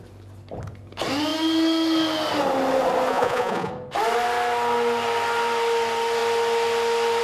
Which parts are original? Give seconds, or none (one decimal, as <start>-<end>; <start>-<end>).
0.0-3.1; 3.7-7.2